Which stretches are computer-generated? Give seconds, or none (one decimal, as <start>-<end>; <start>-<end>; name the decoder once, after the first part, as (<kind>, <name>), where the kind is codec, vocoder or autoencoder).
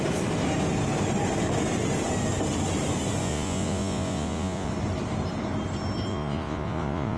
3.2-4.7 (vocoder, Vocos); 6.1-7.2